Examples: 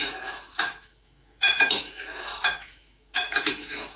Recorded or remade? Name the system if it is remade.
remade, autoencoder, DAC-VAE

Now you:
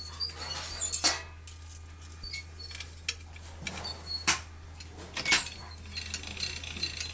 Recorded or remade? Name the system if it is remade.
recorded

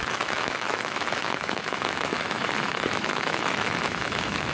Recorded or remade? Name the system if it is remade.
remade, autoencoder, DAC-VAE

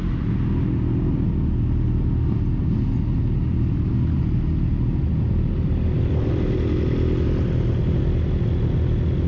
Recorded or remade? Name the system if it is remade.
recorded